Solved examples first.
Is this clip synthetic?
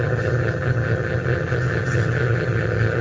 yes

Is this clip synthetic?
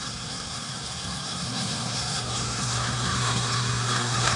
yes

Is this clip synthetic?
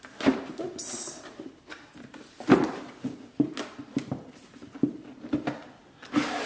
no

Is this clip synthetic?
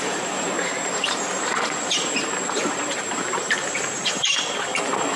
yes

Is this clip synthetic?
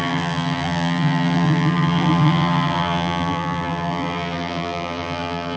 yes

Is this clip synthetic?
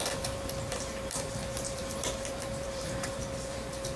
yes